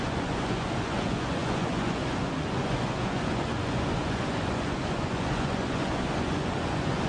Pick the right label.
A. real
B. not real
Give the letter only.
B